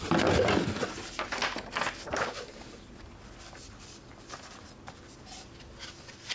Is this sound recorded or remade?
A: recorded